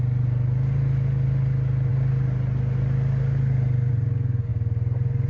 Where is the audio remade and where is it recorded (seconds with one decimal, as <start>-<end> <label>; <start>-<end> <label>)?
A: 0.0-5.3 recorded